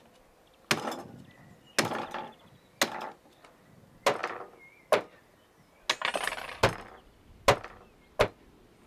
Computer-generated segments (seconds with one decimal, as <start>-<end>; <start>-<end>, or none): none